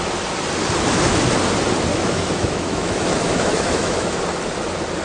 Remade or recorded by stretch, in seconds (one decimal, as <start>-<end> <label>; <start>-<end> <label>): 0.0-1.9 recorded; 1.9-4.2 remade; 4.2-5.0 recorded